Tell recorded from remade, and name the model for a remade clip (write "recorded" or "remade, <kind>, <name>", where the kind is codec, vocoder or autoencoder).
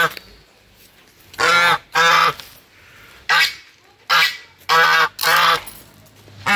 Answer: recorded